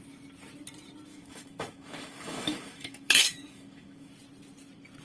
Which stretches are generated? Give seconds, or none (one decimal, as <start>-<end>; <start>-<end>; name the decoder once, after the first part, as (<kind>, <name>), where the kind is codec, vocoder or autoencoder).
1.1-4.1 (autoencoder, DAC-VAE)